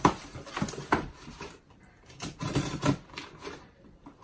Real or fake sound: fake